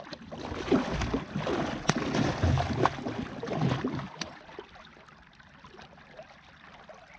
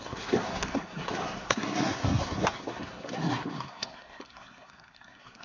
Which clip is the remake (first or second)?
second